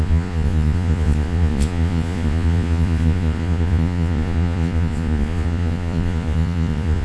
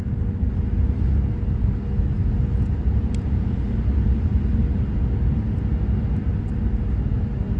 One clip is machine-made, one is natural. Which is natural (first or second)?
second